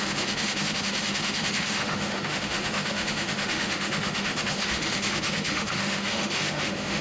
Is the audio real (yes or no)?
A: no